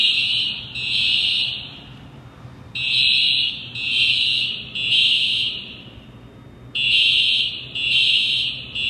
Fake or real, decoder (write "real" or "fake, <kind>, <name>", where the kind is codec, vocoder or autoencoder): real